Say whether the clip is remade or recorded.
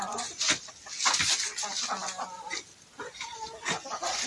recorded